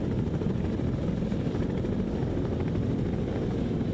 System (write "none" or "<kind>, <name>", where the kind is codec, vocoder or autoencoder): none